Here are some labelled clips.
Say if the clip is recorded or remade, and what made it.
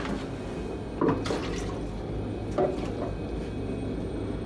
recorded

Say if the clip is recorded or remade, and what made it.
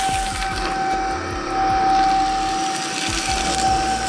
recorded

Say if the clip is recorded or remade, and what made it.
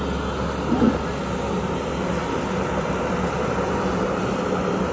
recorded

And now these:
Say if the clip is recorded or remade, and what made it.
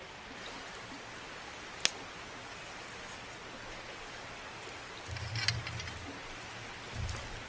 recorded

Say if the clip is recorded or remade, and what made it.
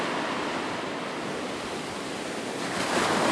recorded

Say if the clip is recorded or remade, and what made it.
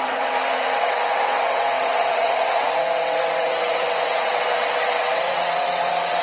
remade, vocoder, WaveNeXt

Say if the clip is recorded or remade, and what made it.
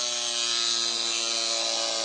recorded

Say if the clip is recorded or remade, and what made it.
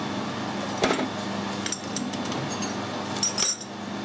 recorded